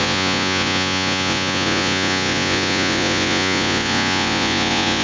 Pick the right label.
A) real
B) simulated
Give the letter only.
B